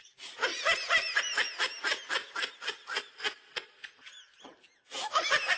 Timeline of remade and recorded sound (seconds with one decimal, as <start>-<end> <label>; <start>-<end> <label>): 0.0-0.5 recorded; 0.5-1.4 remade; 1.4-5.6 recorded